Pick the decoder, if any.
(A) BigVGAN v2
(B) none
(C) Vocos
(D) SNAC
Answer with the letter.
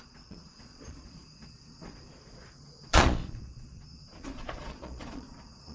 C